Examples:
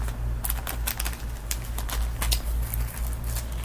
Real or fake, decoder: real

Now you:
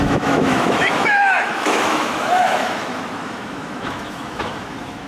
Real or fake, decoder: fake, autoencoder, DAC-VAE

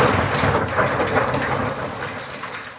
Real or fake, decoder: real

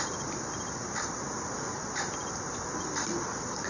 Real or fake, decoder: real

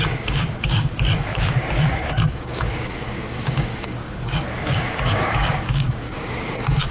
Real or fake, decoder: fake, codec, DAC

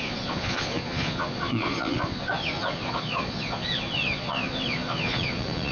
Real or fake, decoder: fake, vocoder, Vocos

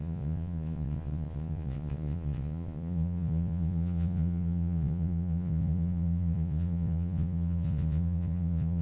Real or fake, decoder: fake, vocoder, Vocos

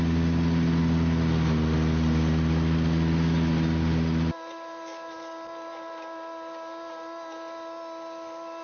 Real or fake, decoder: real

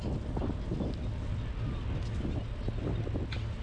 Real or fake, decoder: real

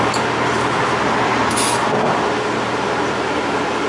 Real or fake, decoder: real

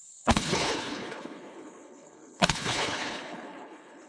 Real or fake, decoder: fake, codec, HILCodec